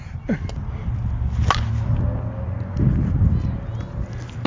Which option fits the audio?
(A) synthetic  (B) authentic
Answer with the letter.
B